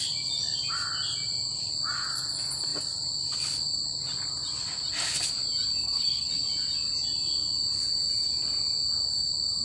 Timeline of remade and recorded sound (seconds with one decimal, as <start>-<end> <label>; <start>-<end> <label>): 0.0-5.8 recorded; 5.8-6.3 remade; 6.3-9.6 recorded